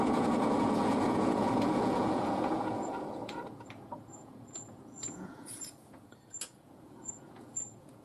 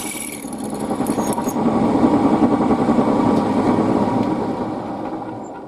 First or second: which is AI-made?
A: first